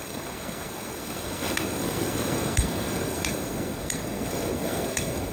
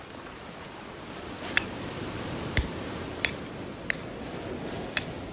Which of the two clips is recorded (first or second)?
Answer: second